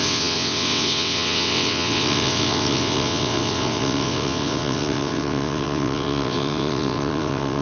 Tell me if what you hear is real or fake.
fake